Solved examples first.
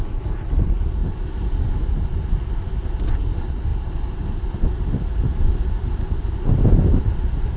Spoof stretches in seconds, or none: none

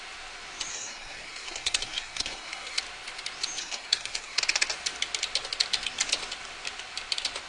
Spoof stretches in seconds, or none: 0.7-2.8 (codec, SNAC); 3.6-4.4

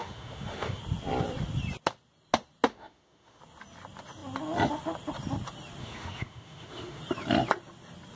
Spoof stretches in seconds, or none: 0.0-0.8 (autoencoder, DAC-VAE); 2.7-3.4; 5.8-7.0